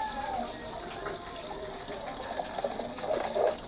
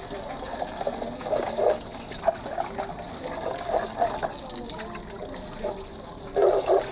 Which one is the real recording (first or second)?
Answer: second